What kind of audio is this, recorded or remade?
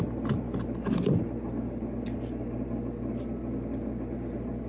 recorded